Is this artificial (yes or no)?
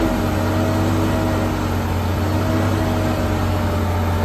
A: no